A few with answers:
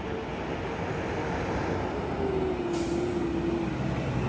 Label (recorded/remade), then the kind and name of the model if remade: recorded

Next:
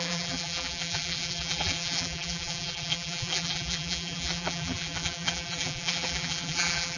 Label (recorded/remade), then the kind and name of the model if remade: remade, vocoder, BigVGAN v2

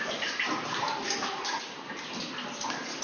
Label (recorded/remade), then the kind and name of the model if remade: recorded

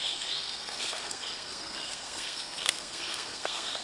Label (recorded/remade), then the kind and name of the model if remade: remade, codec, SNAC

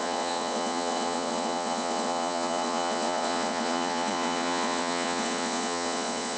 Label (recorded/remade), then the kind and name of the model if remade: remade, vocoder, Vocos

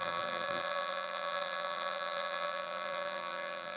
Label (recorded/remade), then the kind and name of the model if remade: remade, vocoder, BigVGAN v2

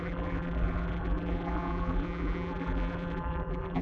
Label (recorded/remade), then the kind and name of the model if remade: remade, vocoder, BigVGAN v2